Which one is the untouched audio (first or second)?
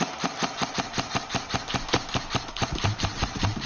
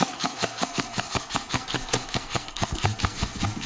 first